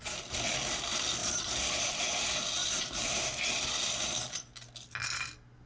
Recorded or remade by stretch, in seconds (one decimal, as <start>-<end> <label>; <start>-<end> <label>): 0.0-1.2 recorded; 1.2-1.9 remade; 1.9-2.6 recorded; 2.6-3.2 remade; 3.2-5.7 recorded

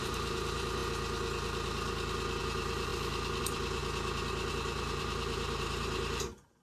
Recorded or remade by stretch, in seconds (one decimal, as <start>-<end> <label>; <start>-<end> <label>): 0.0-0.8 remade; 0.8-2.4 recorded; 2.4-2.9 remade; 2.9-3.4 recorded; 3.4-3.8 remade; 3.8-4.5 recorded; 4.5-6.6 remade

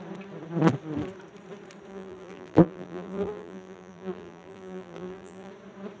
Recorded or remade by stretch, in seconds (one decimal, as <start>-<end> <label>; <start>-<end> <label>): 0.0-1.9 recorded; 1.9-5.5 remade; 5.5-6.0 recorded

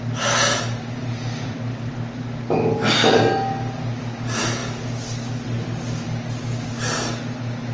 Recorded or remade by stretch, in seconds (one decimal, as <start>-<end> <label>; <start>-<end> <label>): 0.0-1.2 recorded; 1.2-1.9 remade; 1.9-7.7 recorded

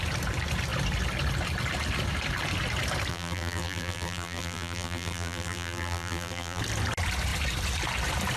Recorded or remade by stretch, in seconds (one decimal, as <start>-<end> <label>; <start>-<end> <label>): 0.0-3.1 recorded; 3.1-6.6 remade; 6.6-8.4 recorded